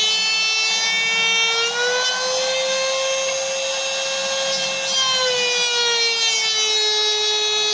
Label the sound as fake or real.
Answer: real